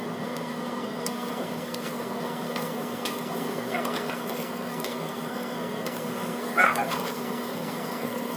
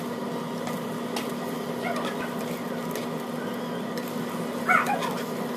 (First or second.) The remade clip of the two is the first